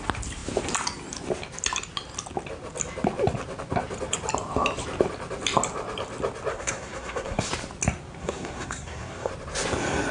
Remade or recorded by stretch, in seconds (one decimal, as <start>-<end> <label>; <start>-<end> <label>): 0.0-6.5 recorded; 6.5-7.5 remade; 7.5-8.2 recorded; 8.2-9.3 remade; 9.3-10.1 recorded